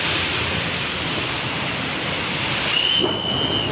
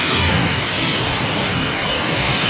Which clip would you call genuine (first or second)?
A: first